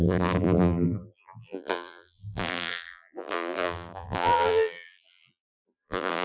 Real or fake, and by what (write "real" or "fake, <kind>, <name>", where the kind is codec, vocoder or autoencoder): fake, vocoder, BigVGAN v2